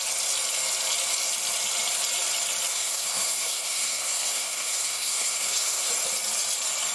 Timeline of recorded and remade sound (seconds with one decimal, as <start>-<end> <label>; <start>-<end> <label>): 0.0-2.7 recorded; 2.7-5.9 remade; 5.9-6.9 recorded